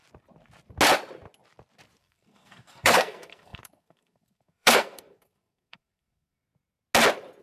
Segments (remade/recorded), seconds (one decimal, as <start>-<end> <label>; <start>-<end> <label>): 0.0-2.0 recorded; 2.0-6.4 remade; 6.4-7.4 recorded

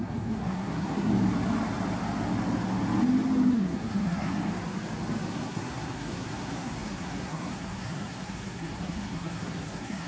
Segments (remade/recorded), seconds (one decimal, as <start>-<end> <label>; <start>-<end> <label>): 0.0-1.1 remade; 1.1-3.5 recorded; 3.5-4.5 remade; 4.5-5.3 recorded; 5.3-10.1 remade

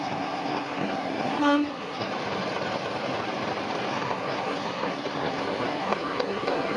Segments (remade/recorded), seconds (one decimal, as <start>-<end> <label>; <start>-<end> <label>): 0.0-2.1 remade; 2.1-3.9 recorded; 3.9-6.8 remade